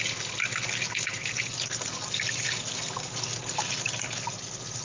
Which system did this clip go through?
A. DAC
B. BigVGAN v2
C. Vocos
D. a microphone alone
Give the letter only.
D